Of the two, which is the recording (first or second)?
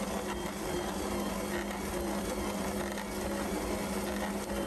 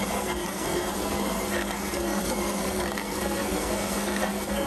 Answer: first